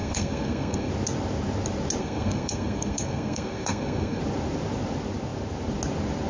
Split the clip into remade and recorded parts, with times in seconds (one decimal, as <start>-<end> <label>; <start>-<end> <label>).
0.0-0.9 remade; 0.9-2.0 recorded; 2.0-4.2 remade; 4.2-6.3 recorded